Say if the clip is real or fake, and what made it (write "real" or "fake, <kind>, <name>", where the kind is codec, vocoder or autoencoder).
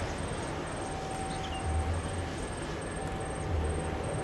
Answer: real